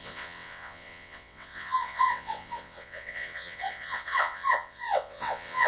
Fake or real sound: fake